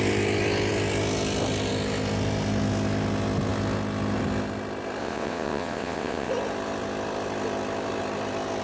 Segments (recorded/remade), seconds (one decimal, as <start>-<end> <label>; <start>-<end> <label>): 0.0-5.0 recorded; 5.0-6.3 remade; 6.3-8.6 recorded